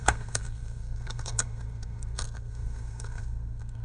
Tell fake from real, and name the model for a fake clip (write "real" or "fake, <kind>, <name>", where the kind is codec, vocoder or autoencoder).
fake, codec, SNAC